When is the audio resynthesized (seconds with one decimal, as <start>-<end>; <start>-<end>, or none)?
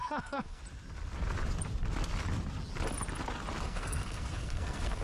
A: 0.0-0.6; 3.6-5.0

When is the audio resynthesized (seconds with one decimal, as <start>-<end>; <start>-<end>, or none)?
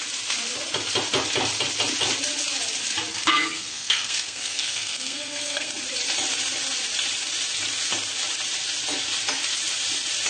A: 3.1-5.7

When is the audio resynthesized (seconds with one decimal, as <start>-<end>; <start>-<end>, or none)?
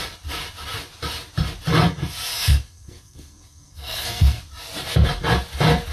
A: 2.3-4.4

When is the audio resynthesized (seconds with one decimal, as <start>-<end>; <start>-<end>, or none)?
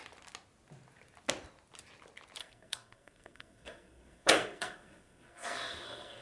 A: 2.4-6.2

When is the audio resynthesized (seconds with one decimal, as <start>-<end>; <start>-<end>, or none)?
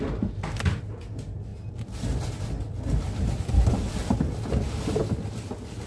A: none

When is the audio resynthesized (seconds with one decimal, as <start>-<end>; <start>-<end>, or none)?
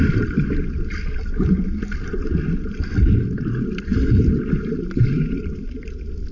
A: none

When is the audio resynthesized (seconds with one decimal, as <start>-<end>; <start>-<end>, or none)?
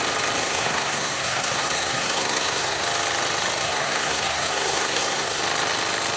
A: 0.4-2.8; 3.6-5.4